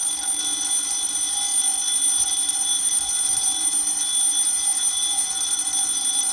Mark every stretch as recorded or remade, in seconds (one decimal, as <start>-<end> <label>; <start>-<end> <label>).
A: 0.0-5.0 recorded; 5.0-5.5 remade; 5.5-6.3 recorded